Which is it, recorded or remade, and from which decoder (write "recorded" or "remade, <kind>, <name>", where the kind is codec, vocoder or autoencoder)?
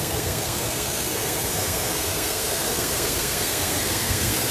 remade, codec, SNAC